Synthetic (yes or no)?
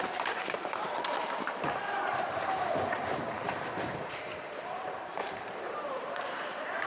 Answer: yes